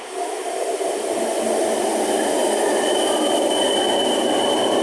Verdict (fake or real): real